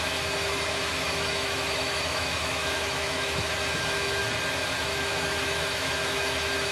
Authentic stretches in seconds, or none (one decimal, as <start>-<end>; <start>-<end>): 4.2-4.8